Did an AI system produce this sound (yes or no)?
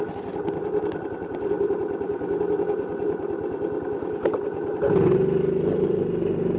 no